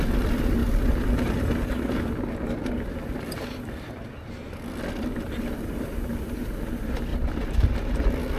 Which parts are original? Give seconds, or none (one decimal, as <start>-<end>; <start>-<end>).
0.0-8.4